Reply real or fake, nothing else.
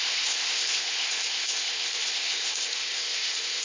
fake